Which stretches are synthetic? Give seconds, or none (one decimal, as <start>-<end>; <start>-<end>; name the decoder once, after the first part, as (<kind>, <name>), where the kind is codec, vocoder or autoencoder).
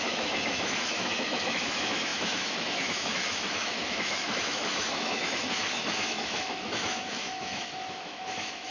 0.0-8.7 (autoencoder, DAC-VAE)